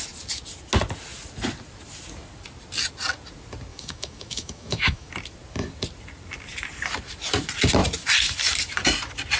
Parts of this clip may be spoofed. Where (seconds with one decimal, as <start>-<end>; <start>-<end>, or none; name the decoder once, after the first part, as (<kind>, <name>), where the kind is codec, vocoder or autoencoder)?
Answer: 3.7-5.1 (autoencoder, DAC-VAE)